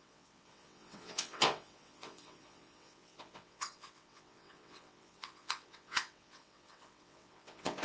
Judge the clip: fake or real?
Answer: fake